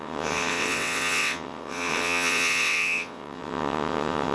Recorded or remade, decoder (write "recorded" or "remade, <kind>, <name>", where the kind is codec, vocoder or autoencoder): remade, vocoder, WaveNeXt